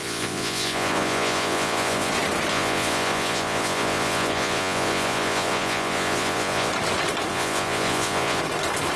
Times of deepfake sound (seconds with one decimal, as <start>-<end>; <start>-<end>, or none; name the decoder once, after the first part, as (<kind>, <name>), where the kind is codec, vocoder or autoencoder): 0.0-2.1 (vocoder, Vocos); 2.5-6.7; 7.3-8.4